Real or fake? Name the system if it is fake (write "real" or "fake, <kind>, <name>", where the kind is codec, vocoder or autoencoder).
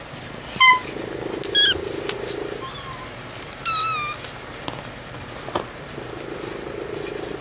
real